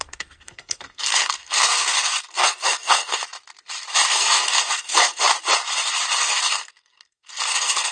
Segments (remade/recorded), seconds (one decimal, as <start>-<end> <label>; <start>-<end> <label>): 0.0-3.2 remade; 3.2-4.1 recorded; 4.1-5.3 remade; 5.3-6.2 recorded; 6.2-7.9 remade